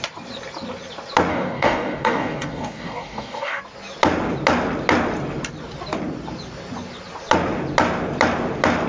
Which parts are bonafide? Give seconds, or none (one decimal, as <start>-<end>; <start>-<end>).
0.0-1.3; 3.6-8.9